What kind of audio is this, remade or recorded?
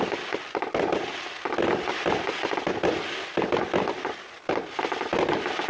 recorded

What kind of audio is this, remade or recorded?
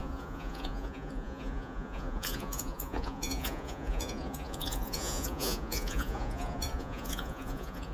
remade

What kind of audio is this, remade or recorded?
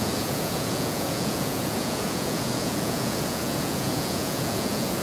remade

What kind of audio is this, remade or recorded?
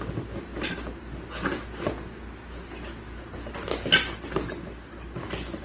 recorded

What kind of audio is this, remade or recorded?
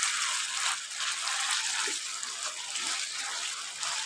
recorded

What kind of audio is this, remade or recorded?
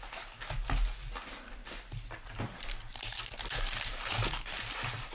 recorded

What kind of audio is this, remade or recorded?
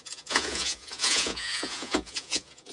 remade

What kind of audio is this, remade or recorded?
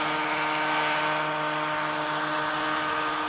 recorded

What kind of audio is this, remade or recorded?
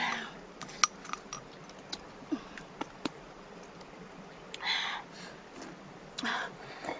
recorded